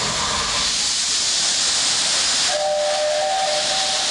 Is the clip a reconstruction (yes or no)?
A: no